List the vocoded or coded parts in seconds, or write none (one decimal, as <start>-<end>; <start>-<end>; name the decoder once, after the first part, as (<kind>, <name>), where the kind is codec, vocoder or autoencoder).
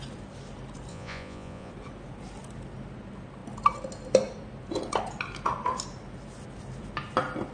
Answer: 0.9-1.7 (vocoder, Vocos)